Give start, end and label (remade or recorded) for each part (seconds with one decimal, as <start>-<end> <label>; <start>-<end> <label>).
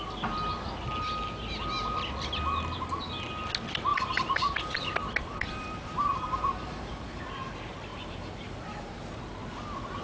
0.0-3.9 recorded; 3.9-7.2 remade; 7.2-7.9 recorded; 7.9-9.2 remade; 9.2-10.0 recorded